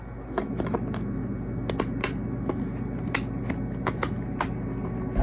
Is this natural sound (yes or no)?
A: yes